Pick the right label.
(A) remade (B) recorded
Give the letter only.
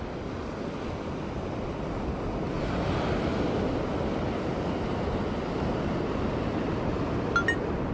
B